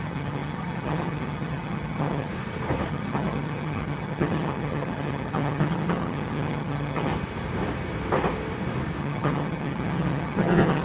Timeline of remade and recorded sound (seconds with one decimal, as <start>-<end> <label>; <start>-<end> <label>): 0.0-2.3 remade; 2.3-2.9 recorded; 2.9-7.1 remade; 7.1-9.0 recorded; 9.0-10.8 remade